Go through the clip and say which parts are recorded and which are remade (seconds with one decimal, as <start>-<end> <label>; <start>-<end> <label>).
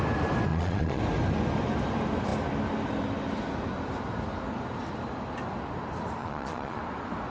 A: 0.0-0.5 recorded; 0.5-1.0 remade; 1.0-6.2 recorded; 6.2-6.8 remade; 6.8-7.3 recorded